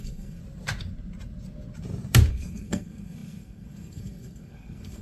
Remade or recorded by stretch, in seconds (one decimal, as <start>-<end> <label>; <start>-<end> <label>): 0.0-0.4 remade; 0.4-2.3 recorded; 2.3-5.0 remade